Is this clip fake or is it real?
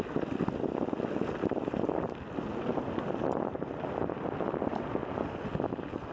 real